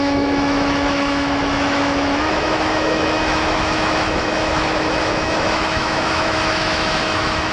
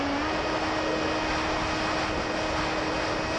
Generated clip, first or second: first